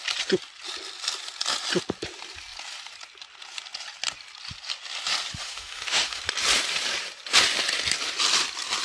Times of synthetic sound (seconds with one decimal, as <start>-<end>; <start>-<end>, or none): 5.4-6.2